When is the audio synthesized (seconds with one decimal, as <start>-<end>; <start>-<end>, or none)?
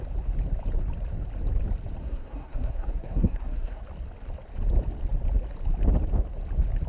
2.0-3.8